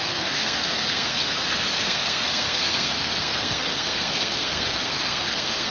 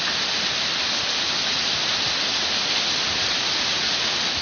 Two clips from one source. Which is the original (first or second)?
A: second